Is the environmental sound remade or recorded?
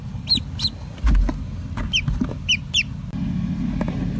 recorded